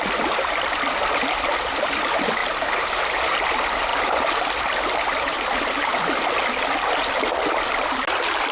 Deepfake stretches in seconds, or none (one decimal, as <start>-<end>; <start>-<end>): 2.4-3.0; 3.9-4.8